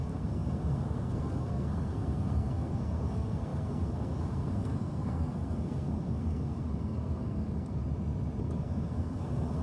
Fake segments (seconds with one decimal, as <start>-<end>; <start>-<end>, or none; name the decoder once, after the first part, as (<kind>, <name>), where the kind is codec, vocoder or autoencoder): 0.0-7.8 (codec, SNAC); 8.4-9.6